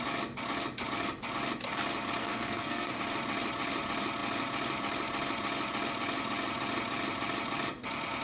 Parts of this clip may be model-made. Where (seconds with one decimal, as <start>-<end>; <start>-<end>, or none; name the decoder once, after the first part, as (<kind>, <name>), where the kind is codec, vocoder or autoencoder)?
2.2-3.0 (codec, SNAC)